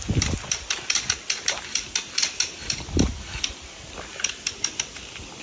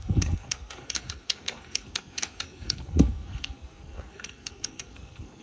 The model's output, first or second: second